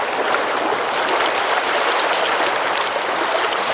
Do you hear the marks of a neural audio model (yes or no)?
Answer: no